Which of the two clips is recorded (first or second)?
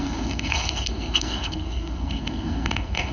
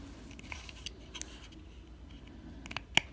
second